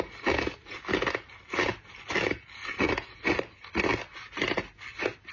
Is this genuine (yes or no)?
yes